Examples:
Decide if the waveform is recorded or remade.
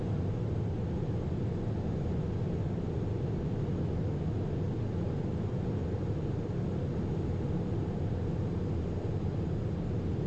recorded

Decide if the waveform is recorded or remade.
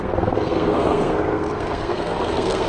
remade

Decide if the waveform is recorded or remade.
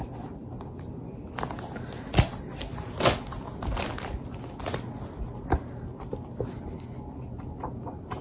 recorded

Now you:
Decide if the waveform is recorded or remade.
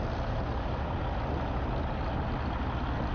recorded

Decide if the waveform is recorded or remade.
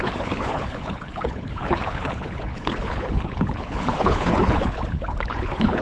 remade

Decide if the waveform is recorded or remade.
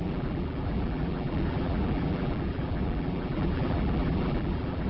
remade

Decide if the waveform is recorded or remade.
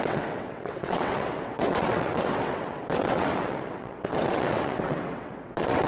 remade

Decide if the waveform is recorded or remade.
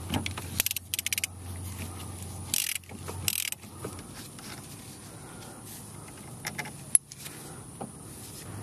recorded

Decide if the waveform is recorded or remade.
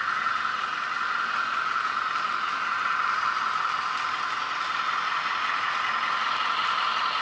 recorded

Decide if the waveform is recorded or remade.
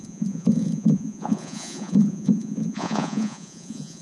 remade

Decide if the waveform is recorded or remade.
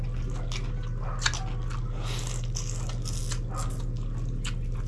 recorded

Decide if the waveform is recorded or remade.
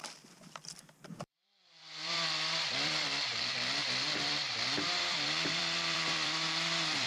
remade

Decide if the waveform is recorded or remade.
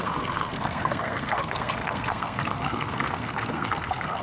remade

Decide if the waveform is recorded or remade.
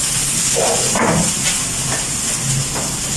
recorded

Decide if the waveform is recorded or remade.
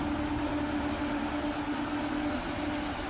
recorded